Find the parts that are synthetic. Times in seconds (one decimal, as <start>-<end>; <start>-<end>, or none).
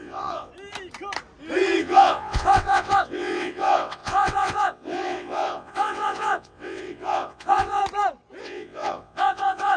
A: 0.0-0.5; 1.8-7.8; 8.4-9.8